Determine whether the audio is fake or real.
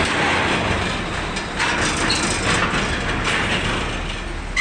real